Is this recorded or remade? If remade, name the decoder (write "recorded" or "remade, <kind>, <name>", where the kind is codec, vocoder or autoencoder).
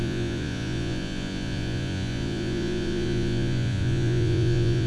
remade, vocoder, Vocos